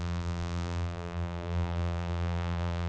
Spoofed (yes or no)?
yes